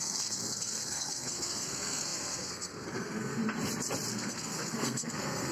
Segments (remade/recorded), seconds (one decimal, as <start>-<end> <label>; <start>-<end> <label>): 0.0-3.4 remade; 3.4-4.1 recorded; 4.1-5.5 remade